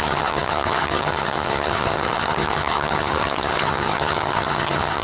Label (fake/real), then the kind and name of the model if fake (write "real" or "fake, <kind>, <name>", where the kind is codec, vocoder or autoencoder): fake, vocoder, HiFi-GAN